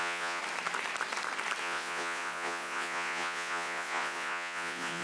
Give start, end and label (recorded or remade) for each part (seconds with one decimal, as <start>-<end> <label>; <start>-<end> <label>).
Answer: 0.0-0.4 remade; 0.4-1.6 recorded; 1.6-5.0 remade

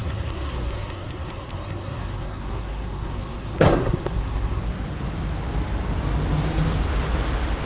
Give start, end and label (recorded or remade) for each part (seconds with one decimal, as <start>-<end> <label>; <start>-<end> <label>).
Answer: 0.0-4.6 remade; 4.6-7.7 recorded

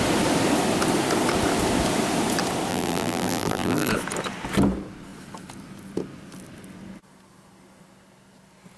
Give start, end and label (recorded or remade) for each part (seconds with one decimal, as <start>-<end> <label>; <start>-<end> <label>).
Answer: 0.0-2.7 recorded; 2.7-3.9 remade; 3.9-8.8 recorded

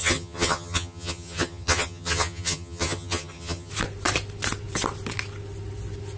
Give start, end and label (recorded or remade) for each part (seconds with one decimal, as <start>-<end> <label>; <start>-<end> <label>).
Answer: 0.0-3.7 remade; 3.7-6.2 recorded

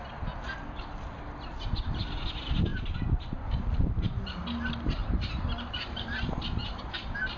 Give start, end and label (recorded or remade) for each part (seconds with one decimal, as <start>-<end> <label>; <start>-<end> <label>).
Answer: 0.0-2.7 recorded; 2.7-4.2 remade; 4.2-5.0 recorded; 5.0-6.5 remade; 6.5-7.4 recorded